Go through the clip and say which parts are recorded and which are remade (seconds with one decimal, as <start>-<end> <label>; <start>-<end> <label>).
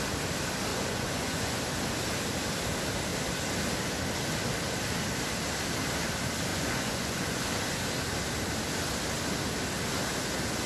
0.0-0.7 recorded; 0.7-1.6 remade; 1.6-6.5 recorded; 6.5-7.5 remade; 7.5-10.7 recorded